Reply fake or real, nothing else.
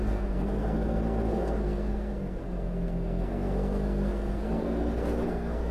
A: fake